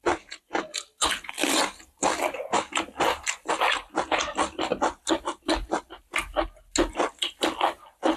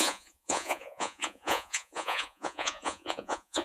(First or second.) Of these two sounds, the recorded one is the first